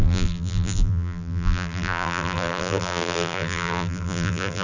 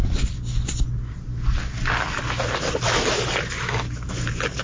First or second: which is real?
second